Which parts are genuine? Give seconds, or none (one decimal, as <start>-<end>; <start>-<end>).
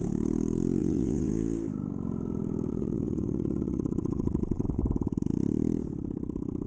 0.0-0.8; 1.3-2.7; 4.8-6.7